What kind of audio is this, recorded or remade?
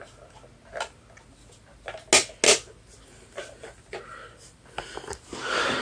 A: recorded